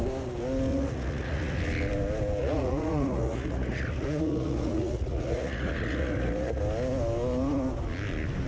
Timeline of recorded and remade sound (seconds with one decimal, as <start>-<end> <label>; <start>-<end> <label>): 0.0-0.7 recorded; 0.7-1.6 remade; 1.6-2.4 recorded; 2.4-6.6 remade; 6.6-8.5 recorded

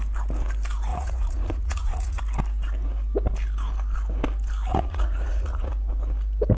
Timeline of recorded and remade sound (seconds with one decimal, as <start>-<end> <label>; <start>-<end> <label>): 0.0-0.9 recorded; 0.9-2.2 remade; 2.2-4.7 recorded; 4.7-5.7 remade; 5.7-6.6 recorded